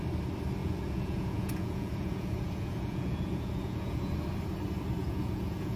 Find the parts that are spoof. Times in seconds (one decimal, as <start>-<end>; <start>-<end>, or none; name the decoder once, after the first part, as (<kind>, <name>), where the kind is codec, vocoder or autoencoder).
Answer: 0.6-4.1 (vocoder, Vocos); 5.0-5.8